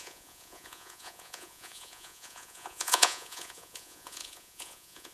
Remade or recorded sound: remade